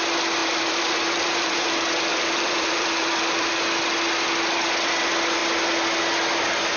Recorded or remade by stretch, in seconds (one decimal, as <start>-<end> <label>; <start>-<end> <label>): 0.0-0.4 recorded; 0.4-1.7 remade; 1.7-2.1 recorded; 2.1-3.5 remade; 3.5-6.8 recorded